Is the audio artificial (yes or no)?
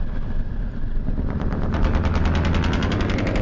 no